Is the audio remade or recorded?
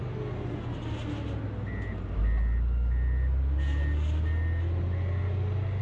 recorded